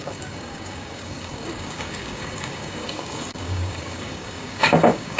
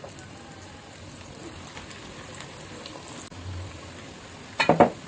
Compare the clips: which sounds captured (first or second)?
second